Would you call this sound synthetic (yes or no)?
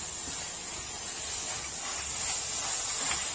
no